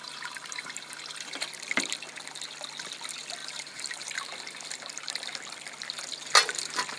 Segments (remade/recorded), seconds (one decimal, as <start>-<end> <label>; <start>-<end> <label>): 0.0-1.0 remade; 1.0-3.4 recorded; 3.4-5.3 remade; 5.3-7.0 recorded